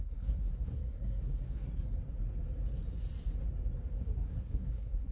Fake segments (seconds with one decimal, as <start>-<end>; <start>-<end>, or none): 0.0-1.7; 4.0-5.1